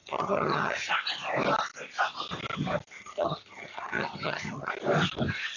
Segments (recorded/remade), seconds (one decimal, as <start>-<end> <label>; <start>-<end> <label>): 0.0-0.9 remade; 0.9-3.0 recorded; 3.0-4.7 remade; 4.7-5.6 recorded